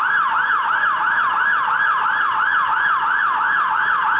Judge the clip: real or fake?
real